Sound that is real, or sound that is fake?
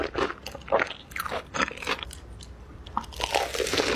real